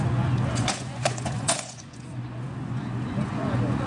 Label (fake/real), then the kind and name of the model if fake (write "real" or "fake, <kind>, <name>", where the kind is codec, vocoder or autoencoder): fake, vocoder, Vocos